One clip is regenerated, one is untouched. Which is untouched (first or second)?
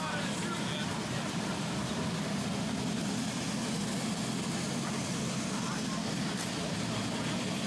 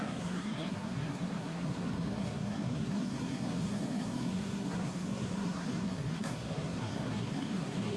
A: first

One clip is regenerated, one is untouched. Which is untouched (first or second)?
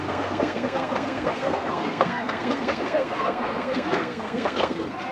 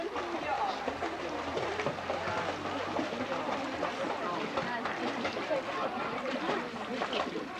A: second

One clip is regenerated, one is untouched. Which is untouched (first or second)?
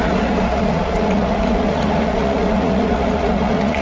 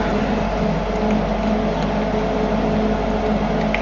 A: second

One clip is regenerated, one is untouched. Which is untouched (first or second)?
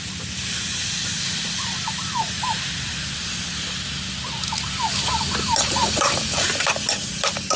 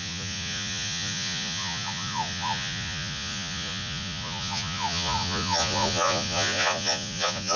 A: first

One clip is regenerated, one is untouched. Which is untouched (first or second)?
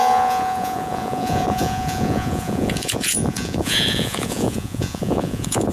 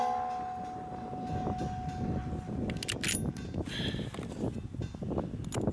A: second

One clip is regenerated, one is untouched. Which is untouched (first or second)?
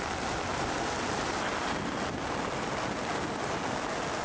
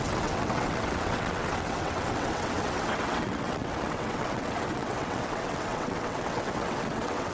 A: first